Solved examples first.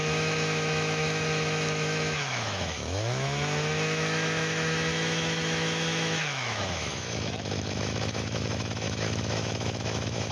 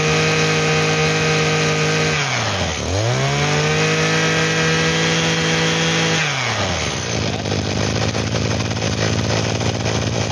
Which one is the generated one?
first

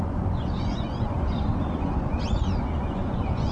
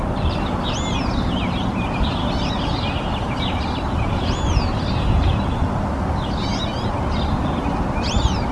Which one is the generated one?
first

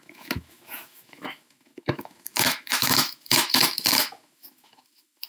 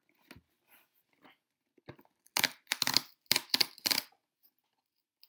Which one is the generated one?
first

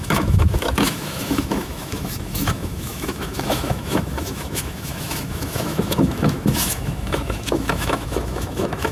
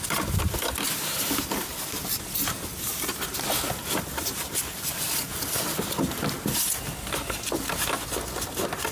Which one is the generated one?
first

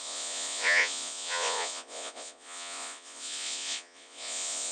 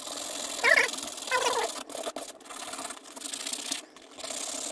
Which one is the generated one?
first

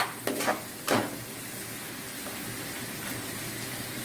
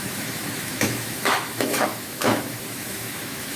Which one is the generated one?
second